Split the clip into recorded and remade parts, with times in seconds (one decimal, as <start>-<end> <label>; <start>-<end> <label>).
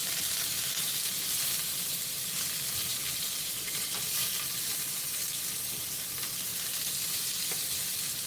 0.0-4.7 remade; 4.7-8.3 recorded